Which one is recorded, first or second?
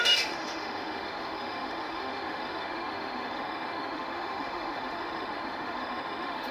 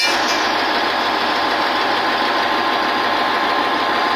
second